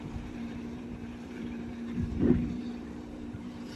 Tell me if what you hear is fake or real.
fake